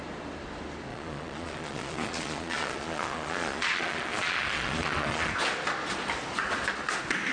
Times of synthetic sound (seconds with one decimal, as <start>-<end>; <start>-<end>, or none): 0.9-5.3